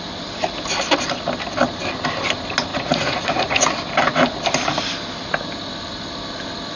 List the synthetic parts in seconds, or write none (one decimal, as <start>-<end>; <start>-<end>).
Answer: 2.7-3.7